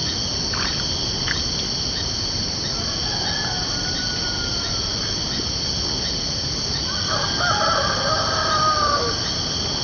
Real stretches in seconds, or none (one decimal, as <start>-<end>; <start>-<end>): 0.0-9.8